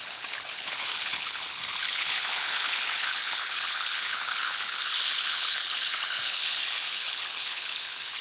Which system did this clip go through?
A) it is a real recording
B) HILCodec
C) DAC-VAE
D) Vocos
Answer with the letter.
B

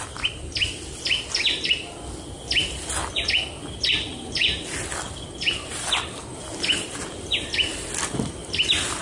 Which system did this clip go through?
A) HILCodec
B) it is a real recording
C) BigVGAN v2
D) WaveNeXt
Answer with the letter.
B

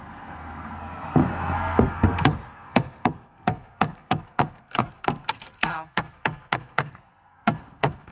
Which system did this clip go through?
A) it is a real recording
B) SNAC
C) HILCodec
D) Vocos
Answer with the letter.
B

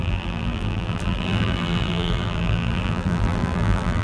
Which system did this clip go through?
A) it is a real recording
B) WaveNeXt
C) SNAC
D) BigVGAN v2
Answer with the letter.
D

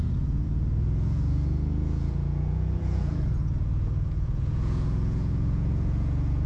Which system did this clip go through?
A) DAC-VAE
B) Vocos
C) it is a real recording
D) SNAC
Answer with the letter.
B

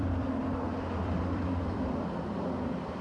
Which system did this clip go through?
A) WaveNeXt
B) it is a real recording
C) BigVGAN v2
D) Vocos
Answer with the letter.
C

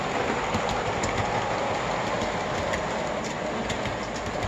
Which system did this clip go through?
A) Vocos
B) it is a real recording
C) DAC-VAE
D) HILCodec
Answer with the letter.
B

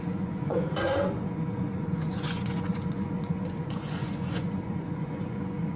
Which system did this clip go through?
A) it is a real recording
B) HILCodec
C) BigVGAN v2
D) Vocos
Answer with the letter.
D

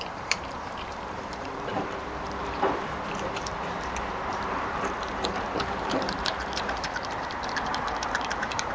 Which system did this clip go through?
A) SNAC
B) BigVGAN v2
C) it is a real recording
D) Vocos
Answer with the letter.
B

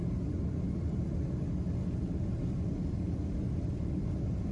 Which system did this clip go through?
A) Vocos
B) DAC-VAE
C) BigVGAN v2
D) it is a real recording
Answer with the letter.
C